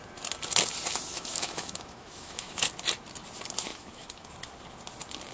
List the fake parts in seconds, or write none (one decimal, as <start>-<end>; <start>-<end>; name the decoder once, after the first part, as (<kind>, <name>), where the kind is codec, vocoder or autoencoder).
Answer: 1.1-2.7 (autoencoder, DAC-VAE); 3.7-4.3

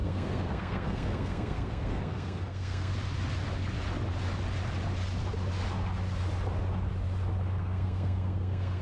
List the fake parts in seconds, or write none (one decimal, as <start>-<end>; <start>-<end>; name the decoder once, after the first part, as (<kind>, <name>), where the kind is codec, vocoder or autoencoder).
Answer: 0.0-2.9 (codec, SNAC); 7.6-8.8

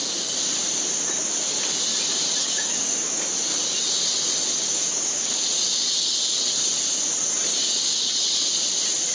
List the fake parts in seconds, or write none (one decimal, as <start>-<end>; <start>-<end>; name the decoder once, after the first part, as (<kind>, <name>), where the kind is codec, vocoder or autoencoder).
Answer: 2.4-3.2 (codec, DAC); 4.6-5.3; 7.5-8.1

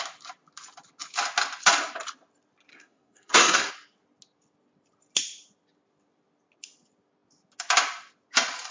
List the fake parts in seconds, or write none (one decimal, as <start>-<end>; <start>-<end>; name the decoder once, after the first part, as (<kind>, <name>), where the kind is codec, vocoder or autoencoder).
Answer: 2.7-3.7 (codec, SNAC)

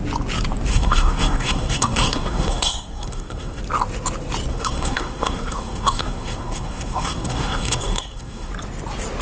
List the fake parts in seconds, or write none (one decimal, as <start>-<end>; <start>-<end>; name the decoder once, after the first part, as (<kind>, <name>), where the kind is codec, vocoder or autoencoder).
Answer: 0.7-3.6 (codec, SNAC); 4.5-8.5